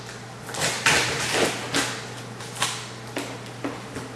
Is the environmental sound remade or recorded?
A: recorded